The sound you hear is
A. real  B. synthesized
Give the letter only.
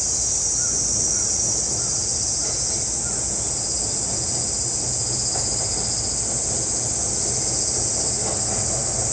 A